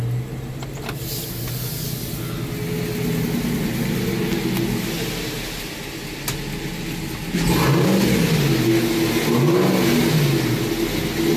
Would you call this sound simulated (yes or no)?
no